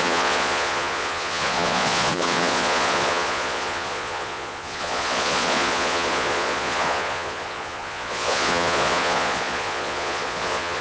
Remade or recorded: remade